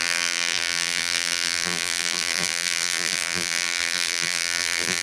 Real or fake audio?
fake